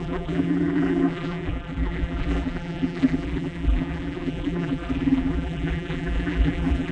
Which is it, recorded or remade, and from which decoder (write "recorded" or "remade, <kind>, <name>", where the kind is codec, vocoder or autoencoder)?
remade, vocoder, BigVGAN v2